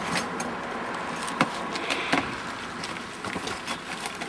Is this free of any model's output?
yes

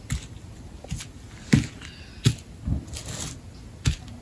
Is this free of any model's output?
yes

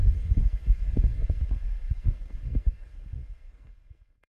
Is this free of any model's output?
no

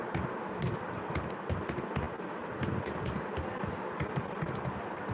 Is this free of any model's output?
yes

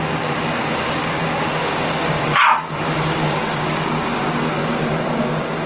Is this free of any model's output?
no